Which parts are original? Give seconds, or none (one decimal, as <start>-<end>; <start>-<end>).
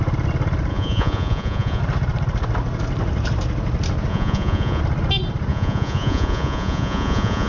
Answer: 0.0-0.7; 1.8-4.1; 4.8-5.5